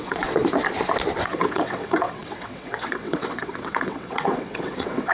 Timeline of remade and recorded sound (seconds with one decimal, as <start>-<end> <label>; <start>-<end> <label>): 0.0-0.4 remade; 0.4-1.2 recorded; 1.2-5.1 remade